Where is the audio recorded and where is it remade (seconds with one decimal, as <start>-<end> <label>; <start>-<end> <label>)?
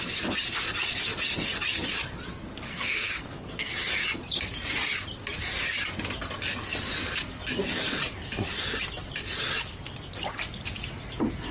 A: 0.0-2.7 recorded; 2.7-3.7 remade; 3.7-11.5 recorded